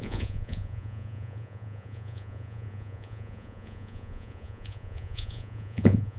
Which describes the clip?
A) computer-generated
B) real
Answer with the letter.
A